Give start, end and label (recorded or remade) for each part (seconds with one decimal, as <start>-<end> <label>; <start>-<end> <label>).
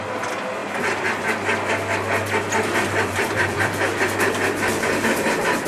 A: 0.0-5.7 recorded